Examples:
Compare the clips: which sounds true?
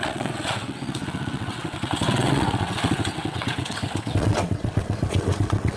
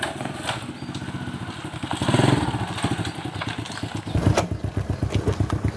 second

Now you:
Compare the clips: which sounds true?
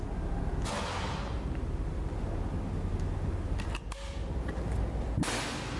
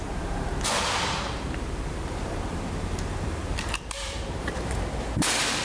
first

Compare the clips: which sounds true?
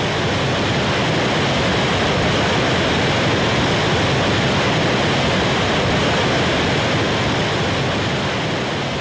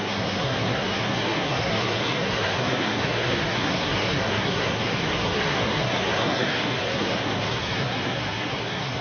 first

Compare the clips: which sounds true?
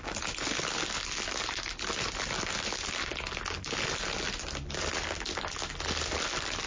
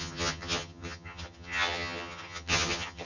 first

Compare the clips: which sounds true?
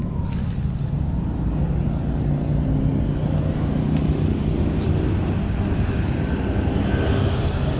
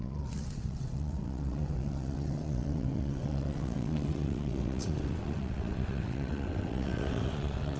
first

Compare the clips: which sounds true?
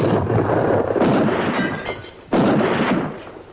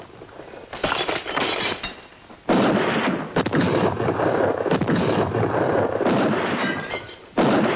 first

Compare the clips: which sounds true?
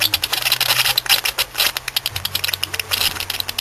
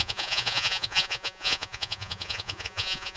first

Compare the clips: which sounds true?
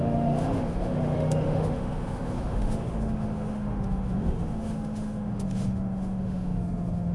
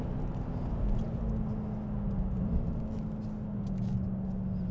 second